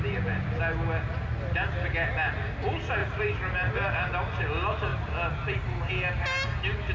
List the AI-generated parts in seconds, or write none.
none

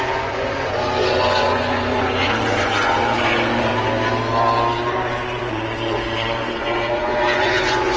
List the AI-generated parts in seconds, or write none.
0.0-3.7 (vocoder, Vocos); 5.4-8.0

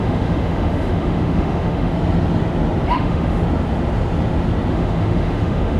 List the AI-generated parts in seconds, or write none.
0.0-1.9 (autoencoder, DAC-VAE); 2.9-3.4; 4.7-5.8

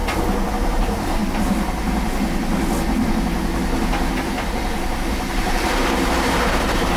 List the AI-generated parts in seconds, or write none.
0.5-1.2 (vocoder, BigVGAN v2); 5.4-7.0

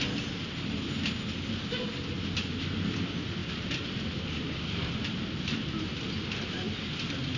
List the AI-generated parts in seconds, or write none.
3.4-5.4 (vocoder, BigVGAN v2)

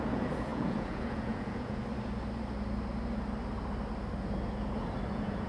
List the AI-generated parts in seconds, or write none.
0.0-1.8 (vocoder, Vocos); 5.1-5.5